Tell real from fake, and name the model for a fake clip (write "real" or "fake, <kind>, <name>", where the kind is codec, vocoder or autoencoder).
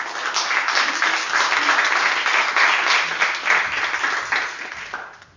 real